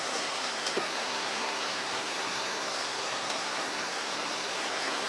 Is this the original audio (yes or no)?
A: no